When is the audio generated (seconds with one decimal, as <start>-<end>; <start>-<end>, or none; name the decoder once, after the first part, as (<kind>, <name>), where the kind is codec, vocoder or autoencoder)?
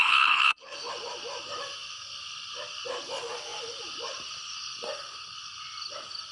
0.0-0.9 (codec, HILCodec)